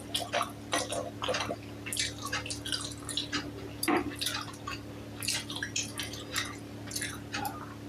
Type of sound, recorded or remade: recorded